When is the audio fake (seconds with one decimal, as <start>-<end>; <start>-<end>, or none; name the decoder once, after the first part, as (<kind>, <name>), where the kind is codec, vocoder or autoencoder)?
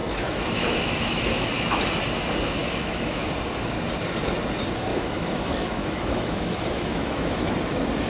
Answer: 0.0-1.8 (autoencoder, DAC-VAE); 2.6-3.3; 4.9-7.4